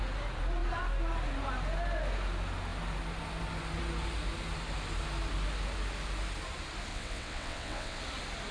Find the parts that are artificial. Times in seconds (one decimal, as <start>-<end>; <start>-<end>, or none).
6.9-8.0